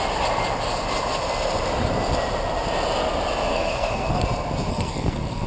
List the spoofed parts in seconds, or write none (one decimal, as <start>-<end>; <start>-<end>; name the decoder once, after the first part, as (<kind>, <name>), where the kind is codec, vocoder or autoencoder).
3.5-4.2 (codec, SNAC); 4.7-5.5